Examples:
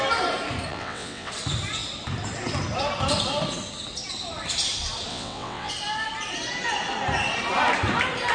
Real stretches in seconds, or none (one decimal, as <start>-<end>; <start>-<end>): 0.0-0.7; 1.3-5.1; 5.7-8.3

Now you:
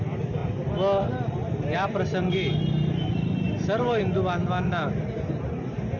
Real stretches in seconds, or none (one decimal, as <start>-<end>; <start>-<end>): 0.0-4.4; 4.9-6.0

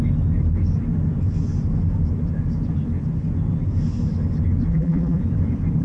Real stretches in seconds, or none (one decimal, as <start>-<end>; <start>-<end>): 0.0-4.7; 5.2-5.8

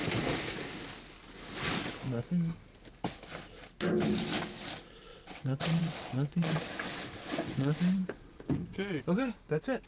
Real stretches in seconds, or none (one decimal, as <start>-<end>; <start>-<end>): 0.0-5.1; 9.0-9.9